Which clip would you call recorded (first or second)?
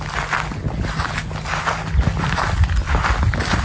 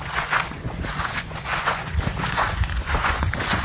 first